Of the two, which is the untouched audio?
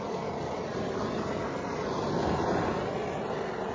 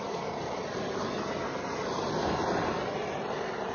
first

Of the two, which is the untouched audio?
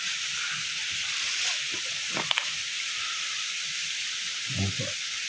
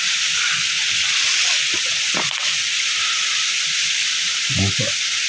second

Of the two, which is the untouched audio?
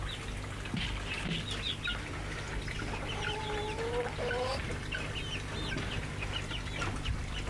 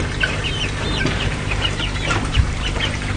first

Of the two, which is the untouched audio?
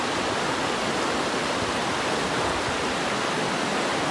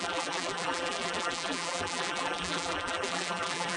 first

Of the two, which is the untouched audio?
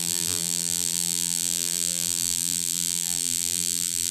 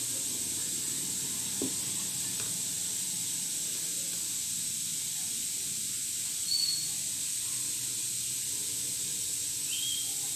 second